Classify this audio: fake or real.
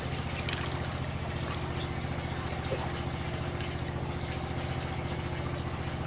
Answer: real